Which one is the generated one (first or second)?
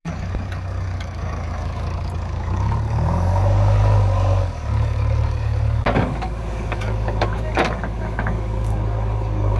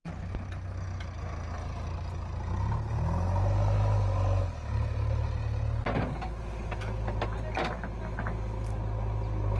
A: first